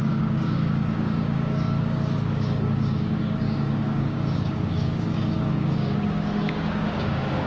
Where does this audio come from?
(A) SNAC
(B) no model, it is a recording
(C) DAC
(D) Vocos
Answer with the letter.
C